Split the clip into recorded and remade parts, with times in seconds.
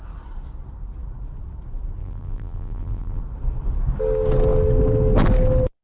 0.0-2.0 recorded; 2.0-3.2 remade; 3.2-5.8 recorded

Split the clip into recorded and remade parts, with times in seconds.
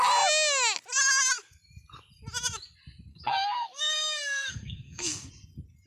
0.0-3.1 recorded; 3.1-5.3 remade; 5.3-5.9 recorded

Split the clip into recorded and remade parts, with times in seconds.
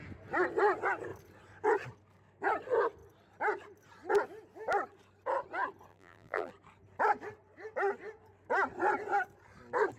0.0-5.9 recorded; 5.9-6.5 remade; 6.5-10.0 recorded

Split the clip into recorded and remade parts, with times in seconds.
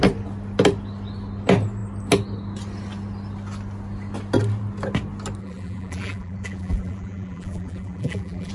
0.0-5.4 recorded; 5.4-8.5 remade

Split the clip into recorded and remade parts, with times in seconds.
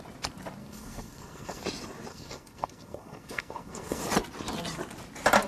0.0-0.6 recorded; 0.6-1.6 remade; 1.6-2.1 recorded; 2.1-4.0 remade; 4.0-5.5 recorded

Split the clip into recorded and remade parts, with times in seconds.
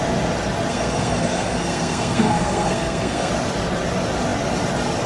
0.0-0.7 recorded; 0.7-3.3 remade; 3.3-5.1 recorded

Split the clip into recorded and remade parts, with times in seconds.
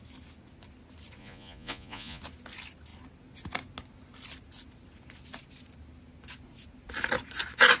0.0-1.2 recorded; 1.2-2.2 remade; 2.2-7.8 recorded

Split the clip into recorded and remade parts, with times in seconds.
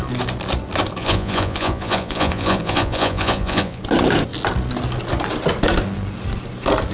0.0-1.0 recorded; 1.0-3.8 remade; 3.8-6.9 recorded